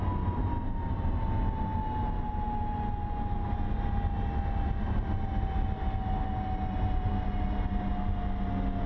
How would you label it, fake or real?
real